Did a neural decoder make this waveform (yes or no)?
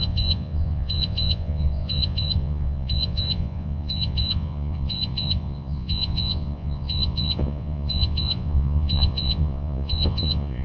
yes